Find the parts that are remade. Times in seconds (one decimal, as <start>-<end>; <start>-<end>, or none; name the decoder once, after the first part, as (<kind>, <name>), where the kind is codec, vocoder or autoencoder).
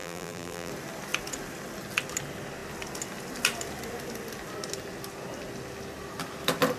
0.0-0.7 (vocoder, BigVGAN v2)